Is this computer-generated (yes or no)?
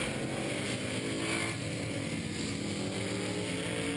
no